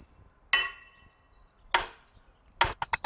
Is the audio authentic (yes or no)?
yes